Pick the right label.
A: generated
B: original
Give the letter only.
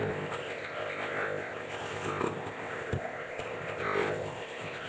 A